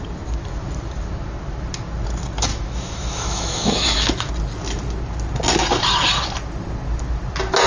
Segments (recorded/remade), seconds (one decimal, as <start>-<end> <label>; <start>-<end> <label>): 0.0-2.5 recorded; 2.5-4.3 remade; 4.3-7.7 recorded